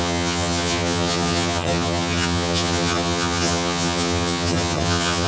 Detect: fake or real fake